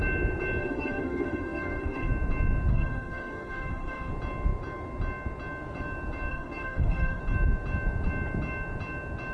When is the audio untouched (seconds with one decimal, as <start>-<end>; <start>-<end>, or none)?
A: 0.0-0.6; 2.1-2.7; 4.1-6.3; 7.2-9.3